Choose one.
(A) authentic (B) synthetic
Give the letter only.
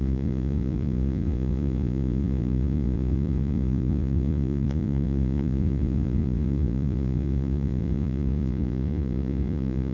B